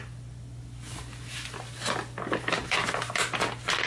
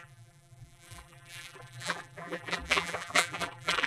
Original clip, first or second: first